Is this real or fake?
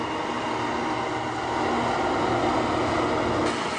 real